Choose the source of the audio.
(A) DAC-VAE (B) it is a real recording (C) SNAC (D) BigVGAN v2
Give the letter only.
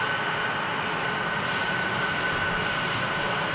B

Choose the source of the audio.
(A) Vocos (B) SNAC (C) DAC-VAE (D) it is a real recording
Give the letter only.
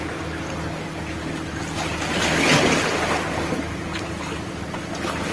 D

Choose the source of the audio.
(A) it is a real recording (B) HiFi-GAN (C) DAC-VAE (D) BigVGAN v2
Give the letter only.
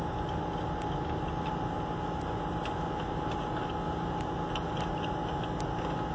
A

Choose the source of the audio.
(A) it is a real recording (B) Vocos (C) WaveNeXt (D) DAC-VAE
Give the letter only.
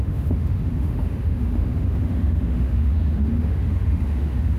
D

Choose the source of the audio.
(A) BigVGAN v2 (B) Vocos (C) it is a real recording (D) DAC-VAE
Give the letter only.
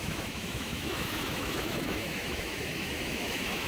D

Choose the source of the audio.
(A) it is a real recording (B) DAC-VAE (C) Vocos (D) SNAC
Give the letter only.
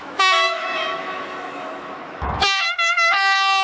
B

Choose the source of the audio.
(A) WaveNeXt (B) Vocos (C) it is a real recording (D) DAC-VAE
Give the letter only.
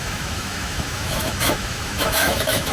D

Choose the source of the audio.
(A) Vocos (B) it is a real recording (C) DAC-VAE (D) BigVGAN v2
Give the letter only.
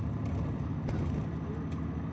B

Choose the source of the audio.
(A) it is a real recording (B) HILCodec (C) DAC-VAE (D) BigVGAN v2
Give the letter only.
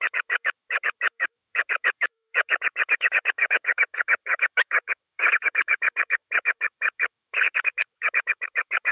C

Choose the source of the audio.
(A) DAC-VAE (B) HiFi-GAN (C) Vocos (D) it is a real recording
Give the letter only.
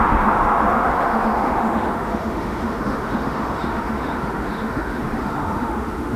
A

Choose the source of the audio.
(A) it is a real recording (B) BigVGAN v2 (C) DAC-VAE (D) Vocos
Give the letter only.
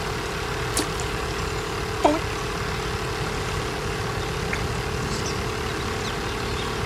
A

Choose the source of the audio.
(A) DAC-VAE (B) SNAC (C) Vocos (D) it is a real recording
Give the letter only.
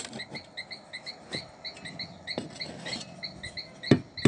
D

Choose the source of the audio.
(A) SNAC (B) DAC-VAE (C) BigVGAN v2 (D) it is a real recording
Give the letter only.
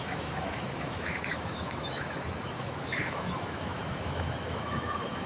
B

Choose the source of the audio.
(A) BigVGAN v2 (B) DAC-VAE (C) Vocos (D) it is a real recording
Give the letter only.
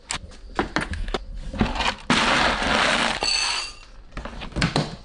D